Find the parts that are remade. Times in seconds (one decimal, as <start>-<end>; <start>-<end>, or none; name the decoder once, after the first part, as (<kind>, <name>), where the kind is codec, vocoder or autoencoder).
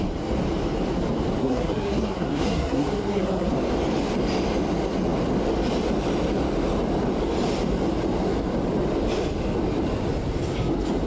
1.4-3.5 (codec, SNAC)